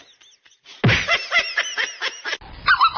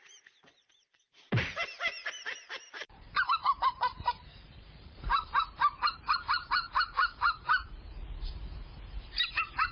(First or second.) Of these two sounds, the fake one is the second